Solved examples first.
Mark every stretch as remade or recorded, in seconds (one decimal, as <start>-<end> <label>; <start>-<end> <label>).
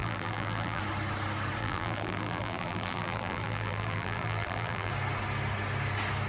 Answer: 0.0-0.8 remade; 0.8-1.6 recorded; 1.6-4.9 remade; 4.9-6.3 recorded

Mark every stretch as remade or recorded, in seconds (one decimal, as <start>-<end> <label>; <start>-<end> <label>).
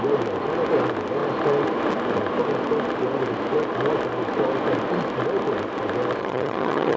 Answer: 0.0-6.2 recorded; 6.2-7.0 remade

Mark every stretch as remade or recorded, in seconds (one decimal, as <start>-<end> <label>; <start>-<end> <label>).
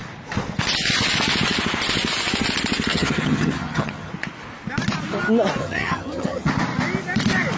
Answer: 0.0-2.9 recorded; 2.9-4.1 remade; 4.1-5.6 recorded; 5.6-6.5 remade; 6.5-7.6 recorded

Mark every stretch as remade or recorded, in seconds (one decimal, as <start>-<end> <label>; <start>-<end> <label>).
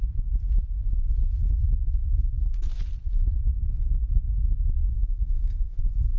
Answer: 0.0-2.0 recorded; 2.0-2.5 remade; 2.5-3.7 recorded; 3.7-4.3 remade; 4.3-4.8 recorded; 4.8-5.8 remade; 5.8-6.2 recorded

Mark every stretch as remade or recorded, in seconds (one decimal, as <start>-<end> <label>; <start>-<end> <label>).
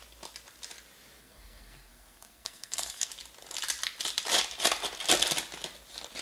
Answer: 0.0-1.2 recorded; 1.2-3.1 remade; 3.1-6.2 recorded